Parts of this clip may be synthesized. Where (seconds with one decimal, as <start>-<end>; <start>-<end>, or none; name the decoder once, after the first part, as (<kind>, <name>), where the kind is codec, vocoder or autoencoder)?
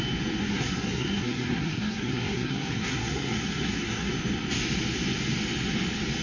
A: 0.4-4.1 (codec, SNAC)